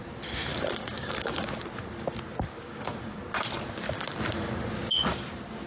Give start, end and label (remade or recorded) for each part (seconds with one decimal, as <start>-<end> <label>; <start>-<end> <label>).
0.0-0.5 recorded; 0.5-1.5 remade; 1.5-2.5 recorded; 2.5-3.2 remade; 3.2-5.7 recorded